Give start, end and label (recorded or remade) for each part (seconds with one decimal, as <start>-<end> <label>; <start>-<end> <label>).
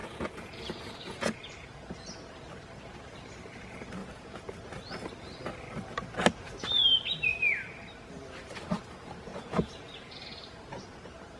0.0-1.5 remade; 1.5-4.0 recorded; 4.0-4.5 remade; 4.5-9.3 recorded; 9.3-9.9 remade; 9.9-11.4 recorded